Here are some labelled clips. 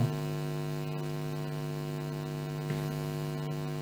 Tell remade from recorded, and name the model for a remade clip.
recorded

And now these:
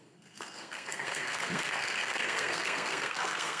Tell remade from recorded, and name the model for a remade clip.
remade, codec, SNAC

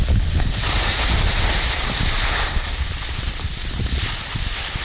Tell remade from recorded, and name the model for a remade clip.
recorded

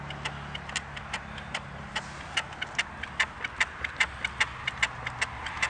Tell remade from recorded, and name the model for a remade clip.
recorded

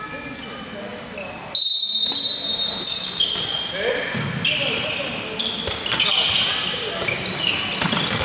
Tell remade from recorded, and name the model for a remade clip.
recorded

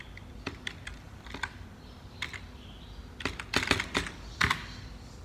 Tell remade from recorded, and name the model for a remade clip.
recorded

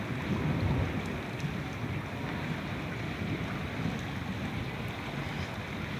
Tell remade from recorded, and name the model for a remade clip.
recorded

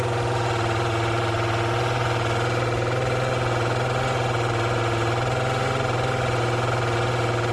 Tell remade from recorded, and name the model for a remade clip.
recorded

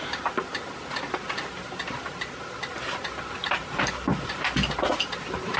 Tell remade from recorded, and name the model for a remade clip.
recorded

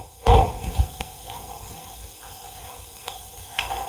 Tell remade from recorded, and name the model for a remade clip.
remade, codec, SNAC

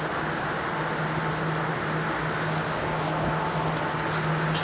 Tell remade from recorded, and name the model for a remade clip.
recorded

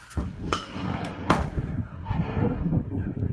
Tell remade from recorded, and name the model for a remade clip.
remade, codec, SNAC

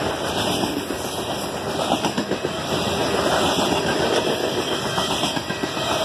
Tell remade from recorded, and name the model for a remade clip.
recorded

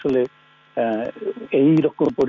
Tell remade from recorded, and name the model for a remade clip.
recorded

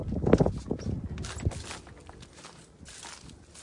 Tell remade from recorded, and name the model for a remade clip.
recorded